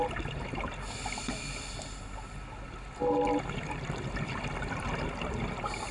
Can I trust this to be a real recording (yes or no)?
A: yes